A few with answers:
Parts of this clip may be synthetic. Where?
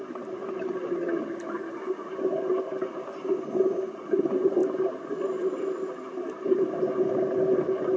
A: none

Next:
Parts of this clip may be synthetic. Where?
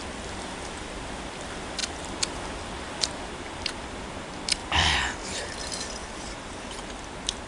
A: 4.6-5.5 (vocoder, BigVGAN v2); 6.0-7.0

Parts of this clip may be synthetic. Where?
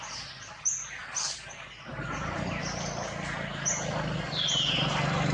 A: none